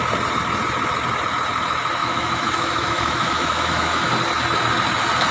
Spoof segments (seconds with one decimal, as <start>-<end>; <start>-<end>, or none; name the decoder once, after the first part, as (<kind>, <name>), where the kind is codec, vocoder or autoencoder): 2.0-4.1 (autoencoder, DAC-VAE)